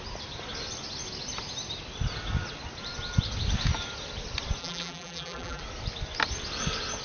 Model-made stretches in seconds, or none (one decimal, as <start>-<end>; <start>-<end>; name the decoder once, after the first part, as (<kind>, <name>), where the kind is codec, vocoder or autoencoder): 4.6-5.6 (vocoder, BigVGAN v2)

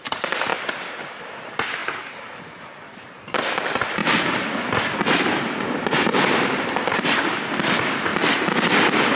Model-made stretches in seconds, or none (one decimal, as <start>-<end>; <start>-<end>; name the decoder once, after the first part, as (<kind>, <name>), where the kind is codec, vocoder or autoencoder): 0.0-0.5 (vocoder, BigVGAN v2); 1.2-1.8; 2.3-8.1

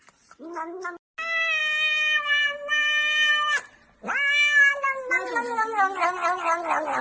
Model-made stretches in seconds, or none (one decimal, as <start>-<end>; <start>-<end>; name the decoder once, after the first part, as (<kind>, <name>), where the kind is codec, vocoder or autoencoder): none

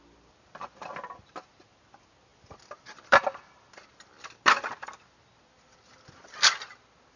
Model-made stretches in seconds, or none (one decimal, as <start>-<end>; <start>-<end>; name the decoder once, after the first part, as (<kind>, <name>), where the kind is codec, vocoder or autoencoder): 2.3-3.7 (vocoder, BigVGAN v2)